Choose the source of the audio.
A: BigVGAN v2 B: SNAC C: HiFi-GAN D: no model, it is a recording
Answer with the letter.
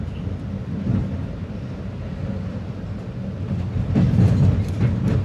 D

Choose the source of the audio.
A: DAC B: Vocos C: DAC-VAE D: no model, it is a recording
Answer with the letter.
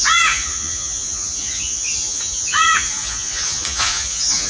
B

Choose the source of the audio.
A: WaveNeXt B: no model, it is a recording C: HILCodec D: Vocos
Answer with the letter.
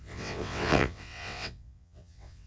A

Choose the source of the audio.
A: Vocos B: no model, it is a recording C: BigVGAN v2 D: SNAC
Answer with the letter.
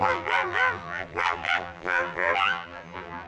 C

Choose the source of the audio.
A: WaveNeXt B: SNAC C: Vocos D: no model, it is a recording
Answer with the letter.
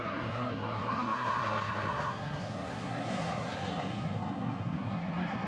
B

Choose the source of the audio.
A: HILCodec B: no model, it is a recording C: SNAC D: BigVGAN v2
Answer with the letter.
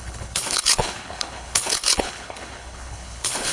A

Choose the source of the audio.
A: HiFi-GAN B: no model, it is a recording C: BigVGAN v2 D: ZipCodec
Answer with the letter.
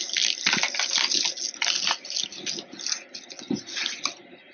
B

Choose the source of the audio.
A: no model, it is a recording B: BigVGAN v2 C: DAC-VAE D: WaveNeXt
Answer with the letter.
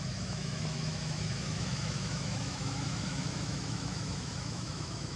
C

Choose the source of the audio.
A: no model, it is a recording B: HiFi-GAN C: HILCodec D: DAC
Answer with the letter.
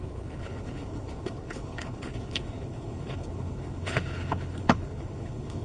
C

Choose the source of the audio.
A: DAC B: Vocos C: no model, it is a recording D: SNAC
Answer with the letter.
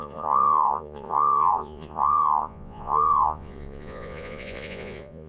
B